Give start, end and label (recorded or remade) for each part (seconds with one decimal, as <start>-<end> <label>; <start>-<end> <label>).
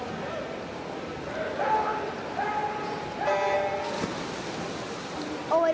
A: 0.0-5.7 recorded